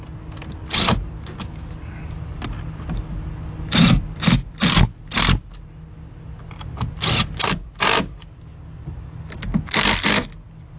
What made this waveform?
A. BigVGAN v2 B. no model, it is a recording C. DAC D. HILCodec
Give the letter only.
B